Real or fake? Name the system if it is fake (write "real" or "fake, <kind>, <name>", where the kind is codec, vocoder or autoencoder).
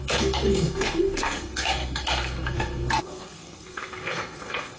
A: fake, codec, SNAC